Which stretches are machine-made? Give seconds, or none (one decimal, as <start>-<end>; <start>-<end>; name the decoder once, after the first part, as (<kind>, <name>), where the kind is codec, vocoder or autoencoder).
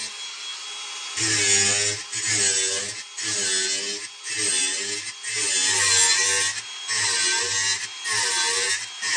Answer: none